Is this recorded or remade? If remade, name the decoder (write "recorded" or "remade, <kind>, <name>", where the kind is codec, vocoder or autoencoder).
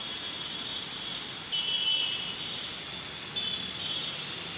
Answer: recorded